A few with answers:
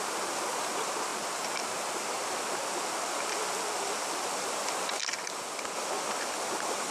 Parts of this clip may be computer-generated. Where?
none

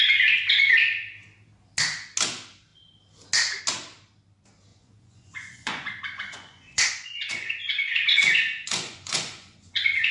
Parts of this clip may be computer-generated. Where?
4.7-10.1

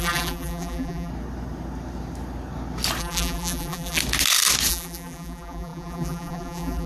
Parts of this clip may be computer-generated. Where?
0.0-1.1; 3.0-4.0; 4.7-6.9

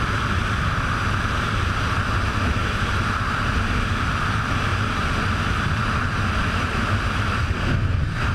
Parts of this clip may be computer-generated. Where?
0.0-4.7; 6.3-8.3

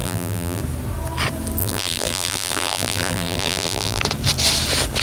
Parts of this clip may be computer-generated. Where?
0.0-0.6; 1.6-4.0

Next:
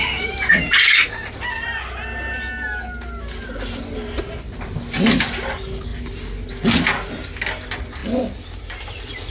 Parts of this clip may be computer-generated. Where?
none

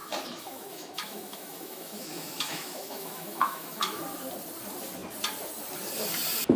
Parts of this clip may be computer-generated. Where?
0.0-4.0

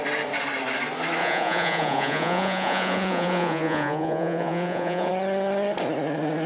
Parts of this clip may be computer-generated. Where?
1.2-5.1